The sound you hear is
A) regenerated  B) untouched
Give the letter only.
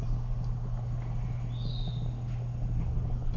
B